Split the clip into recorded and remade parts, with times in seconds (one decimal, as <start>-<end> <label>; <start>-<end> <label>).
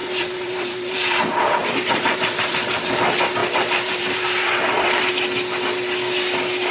0.0-1.2 remade; 1.2-1.6 recorded; 1.6-2.8 remade; 2.8-3.4 recorded; 3.4-5.1 remade; 5.1-6.7 recorded